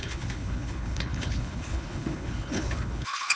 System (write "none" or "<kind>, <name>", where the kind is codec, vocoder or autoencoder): codec, HILCodec